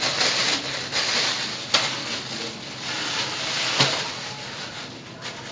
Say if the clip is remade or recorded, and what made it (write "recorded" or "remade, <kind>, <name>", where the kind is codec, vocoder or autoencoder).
recorded